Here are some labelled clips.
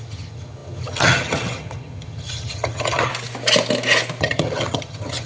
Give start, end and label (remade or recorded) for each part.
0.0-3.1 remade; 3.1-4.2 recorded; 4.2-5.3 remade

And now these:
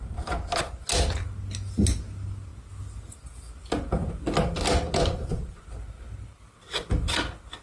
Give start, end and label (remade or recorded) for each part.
0.0-7.6 recorded

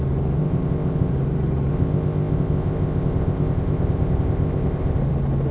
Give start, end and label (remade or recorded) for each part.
0.0-0.4 recorded; 0.4-1.1 remade; 1.1-1.7 recorded; 1.7-5.0 remade; 5.0-5.5 recorded

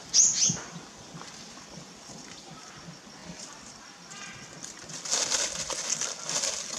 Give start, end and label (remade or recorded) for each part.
0.0-6.8 recorded

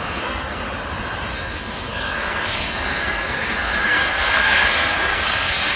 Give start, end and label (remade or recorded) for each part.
0.0-0.6 remade; 0.6-1.3 recorded; 1.3-5.8 remade

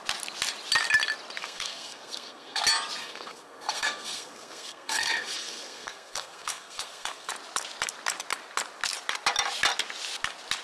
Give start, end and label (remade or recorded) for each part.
0.0-1.4 recorded; 1.4-2.6 remade; 2.6-3.0 recorded; 3.0-7.3 remade; 7.3-10.6 recorded